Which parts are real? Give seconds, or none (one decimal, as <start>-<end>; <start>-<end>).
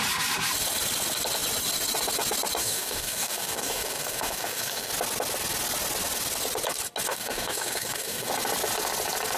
0.0-2.6; 4.9-7.1; 8.3-9.4